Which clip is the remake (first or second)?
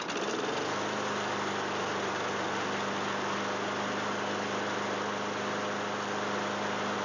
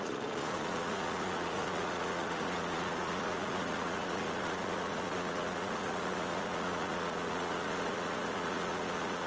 second